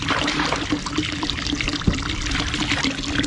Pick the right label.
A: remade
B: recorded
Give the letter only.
B